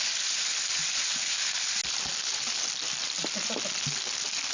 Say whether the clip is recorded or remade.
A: recorded